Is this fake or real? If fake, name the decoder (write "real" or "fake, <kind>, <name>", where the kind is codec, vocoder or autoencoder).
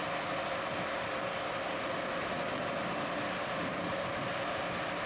real